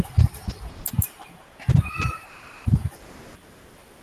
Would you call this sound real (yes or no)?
no